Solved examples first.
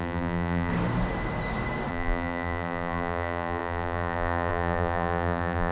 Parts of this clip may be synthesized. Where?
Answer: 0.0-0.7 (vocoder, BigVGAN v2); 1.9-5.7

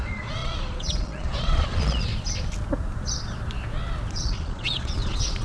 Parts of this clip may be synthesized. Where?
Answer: 0.0-2.1 (vocoder, Vocos); 4.1-5.4